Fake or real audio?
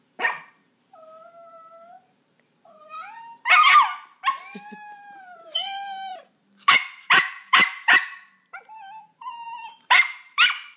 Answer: fake